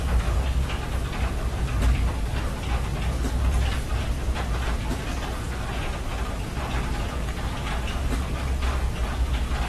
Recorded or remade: recorded